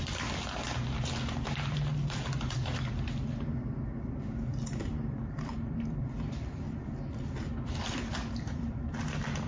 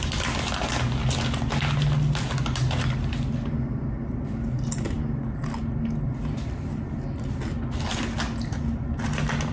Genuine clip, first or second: second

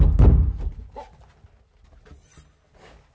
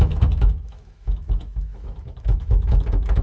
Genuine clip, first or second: first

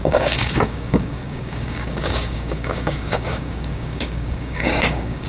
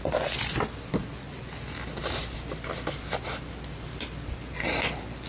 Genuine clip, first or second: second